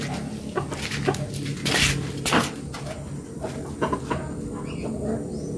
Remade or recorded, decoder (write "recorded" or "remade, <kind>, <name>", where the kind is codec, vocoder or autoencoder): recorded